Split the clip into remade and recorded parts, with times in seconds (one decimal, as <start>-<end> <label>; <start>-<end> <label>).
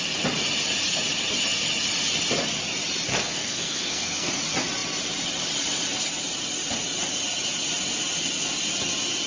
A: 0.0-3.1 recorded; 3.1-4.3 remade; 4.3-9.3 recorded